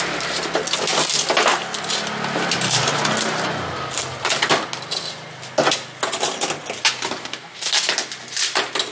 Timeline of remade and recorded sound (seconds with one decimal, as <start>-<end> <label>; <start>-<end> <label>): 0.0-7.2 recorded; 7.2-7.7 remade; 7.7-8.9 recorded